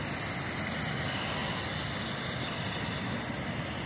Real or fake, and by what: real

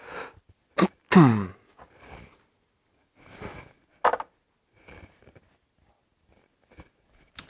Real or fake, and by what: real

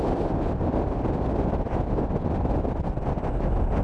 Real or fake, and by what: real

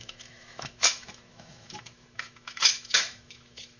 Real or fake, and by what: fake, autoencoder, DAC-VAE